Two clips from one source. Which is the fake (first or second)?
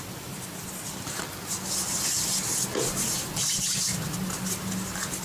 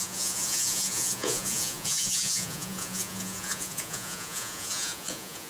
second